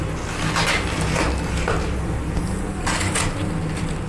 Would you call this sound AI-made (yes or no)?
no